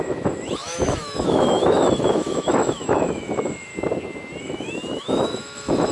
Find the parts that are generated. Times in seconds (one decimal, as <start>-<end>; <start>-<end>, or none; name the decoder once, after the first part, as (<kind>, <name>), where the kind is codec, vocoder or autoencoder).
0.0-3.7 (autoencoder, DAC-VAE); 4.4-5.9